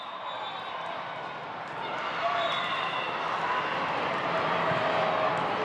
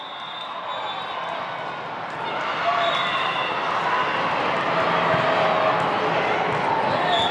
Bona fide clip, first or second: second